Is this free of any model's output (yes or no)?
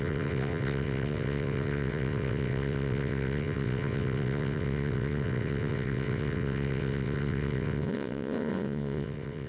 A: no